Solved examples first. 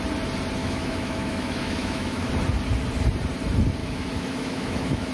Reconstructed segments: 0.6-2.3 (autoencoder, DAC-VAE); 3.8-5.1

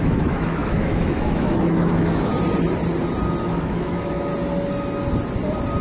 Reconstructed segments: 0.0-2.3 (autoencoder, DAC-VAE); 3.4-4.3

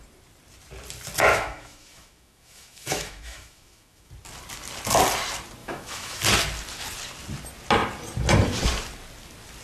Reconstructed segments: 1.3-4.1 (autoencoder, DAC-VAE); 5.6-6.2

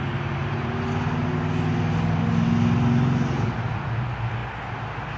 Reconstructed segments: none

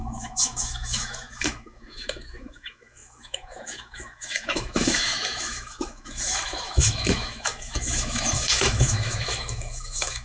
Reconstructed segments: 0.0-10.2 (autoencoder, DAC-VAE)